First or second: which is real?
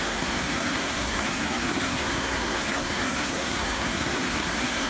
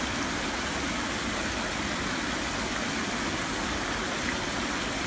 second